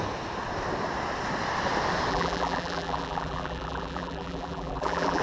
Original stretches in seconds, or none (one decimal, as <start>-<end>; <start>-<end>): 0.0-2.1